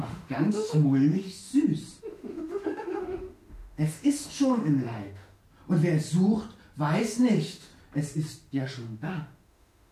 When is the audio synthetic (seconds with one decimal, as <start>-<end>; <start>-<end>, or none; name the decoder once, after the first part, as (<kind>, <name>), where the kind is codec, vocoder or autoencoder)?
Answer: 0.0-1.5 (autoencoder, DAC-VAE); 2.0-5.4; 7.0-7.7; 8.5-9.9